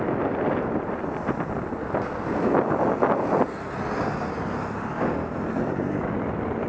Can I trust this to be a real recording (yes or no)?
yes